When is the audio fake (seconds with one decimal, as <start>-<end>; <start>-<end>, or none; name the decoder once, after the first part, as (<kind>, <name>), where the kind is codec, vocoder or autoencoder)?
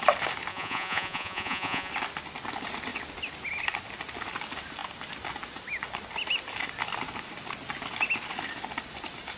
0.5-1.9 (vocoder, Vocos)